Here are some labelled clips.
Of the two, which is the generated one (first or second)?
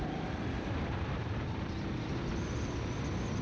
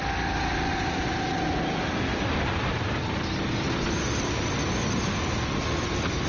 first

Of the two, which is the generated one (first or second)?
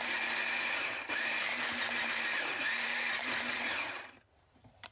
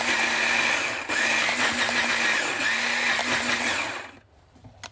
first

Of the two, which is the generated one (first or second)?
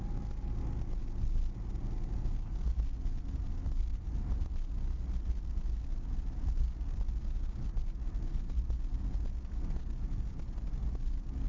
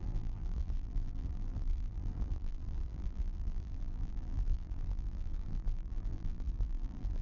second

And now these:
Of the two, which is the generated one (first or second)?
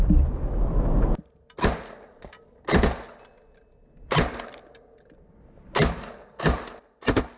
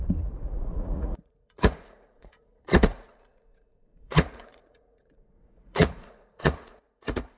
second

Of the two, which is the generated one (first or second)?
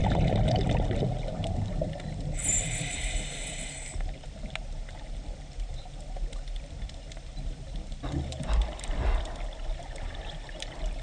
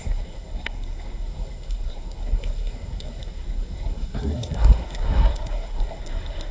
second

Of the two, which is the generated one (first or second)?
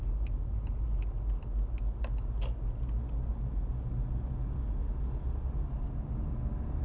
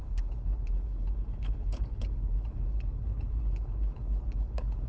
second